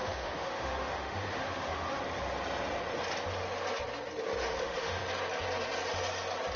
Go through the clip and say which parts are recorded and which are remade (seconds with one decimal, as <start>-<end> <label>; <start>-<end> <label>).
0.0-2.0 remade; 2.0-4.5 recorded; 4.5-5.1 remade; 5.1-6.6 recorded